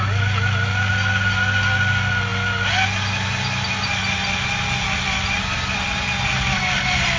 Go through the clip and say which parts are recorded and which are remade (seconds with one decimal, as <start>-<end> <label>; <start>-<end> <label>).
0.0-7.2 recorded